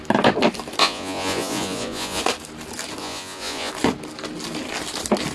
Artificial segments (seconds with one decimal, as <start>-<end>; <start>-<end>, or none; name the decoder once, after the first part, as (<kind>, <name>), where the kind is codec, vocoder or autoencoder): 0.8-2.2 (vocoder, Vocos); 3.0-3.7